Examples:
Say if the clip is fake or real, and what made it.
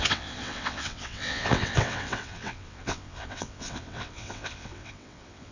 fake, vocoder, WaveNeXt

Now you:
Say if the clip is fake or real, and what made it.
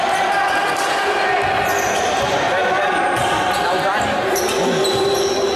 real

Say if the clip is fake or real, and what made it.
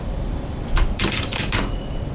real